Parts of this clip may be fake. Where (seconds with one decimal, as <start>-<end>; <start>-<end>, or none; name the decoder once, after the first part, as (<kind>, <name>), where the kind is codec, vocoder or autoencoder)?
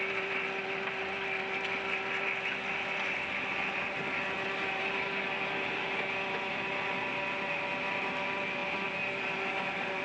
none